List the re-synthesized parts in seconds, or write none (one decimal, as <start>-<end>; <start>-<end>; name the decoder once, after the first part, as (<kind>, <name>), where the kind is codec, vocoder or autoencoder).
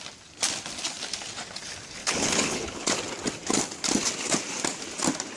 2.0-2.9 (codec, HILCodec)